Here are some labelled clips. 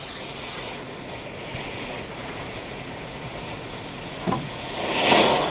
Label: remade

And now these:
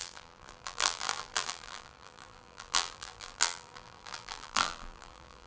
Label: remade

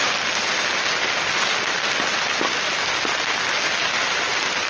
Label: recorded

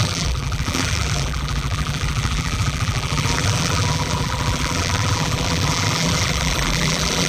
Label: remade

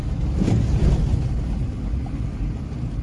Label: recorded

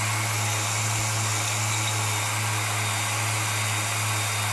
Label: recorded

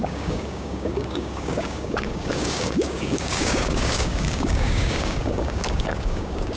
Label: remade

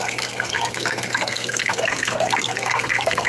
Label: remade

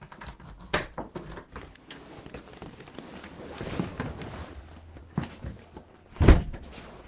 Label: recorded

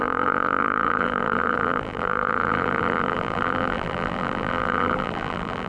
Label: remade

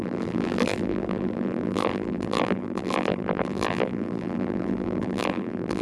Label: remade